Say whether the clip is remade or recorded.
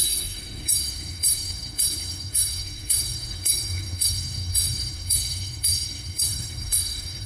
remade